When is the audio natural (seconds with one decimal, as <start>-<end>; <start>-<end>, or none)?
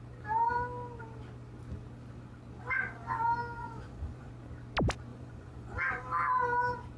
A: 0.0-3.6; 4.3-5.1; 6.0-7.0